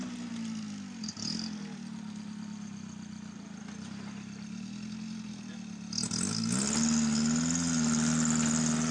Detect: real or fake real